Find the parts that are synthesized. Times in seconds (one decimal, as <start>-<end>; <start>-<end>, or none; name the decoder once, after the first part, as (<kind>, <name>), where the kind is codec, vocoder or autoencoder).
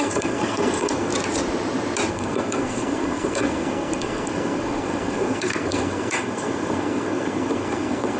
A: 0.0-1.1 (codec, SNAC); 2.1-8.2